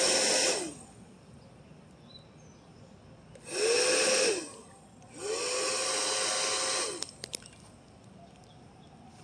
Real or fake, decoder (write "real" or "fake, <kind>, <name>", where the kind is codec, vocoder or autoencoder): real